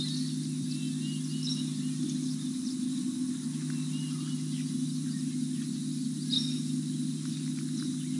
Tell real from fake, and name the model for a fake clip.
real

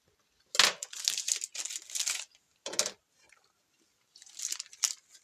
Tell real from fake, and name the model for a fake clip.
real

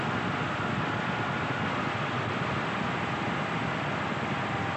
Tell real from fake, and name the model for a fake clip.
real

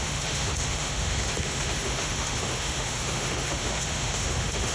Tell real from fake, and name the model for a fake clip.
fake, autoencoder, DAC-VAE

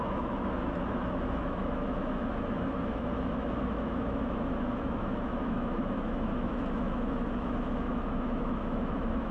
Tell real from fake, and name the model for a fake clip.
fake, autoencoder, DAC-VAE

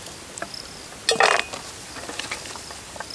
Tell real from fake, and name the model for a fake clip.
real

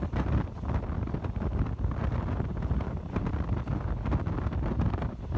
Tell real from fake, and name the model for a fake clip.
real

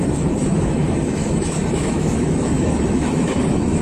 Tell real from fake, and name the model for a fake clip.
fake, autoencoder, DAC-VAE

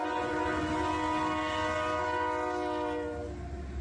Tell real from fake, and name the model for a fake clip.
real